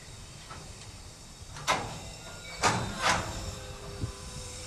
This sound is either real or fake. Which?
fake